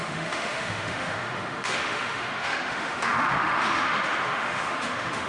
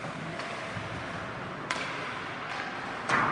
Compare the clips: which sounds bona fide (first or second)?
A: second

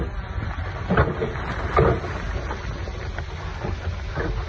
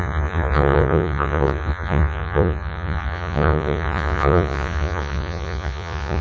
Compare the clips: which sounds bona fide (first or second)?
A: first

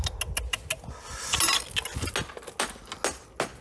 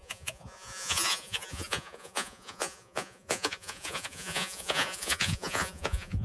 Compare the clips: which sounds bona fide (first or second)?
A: first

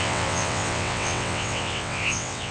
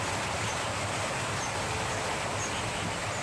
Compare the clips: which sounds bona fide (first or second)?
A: second